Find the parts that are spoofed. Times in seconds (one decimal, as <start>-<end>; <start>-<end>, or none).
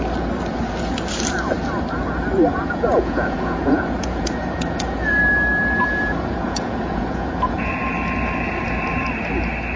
2.5-5.2; 5.8-7.7